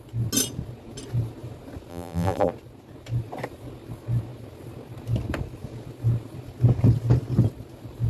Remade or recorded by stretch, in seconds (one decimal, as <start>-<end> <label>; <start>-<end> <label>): 0.0-1.9 recorded; 1.9-2.5 remade; 2.5-8.1 recorded